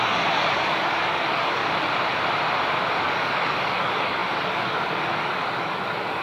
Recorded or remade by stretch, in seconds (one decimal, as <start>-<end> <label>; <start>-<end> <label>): 0.0-1.6 remade; 1.6-3.0 recorded; 3.0-6.2 remade